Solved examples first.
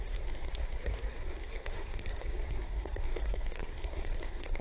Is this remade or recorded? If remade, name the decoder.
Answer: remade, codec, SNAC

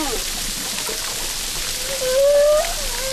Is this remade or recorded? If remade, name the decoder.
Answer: recorded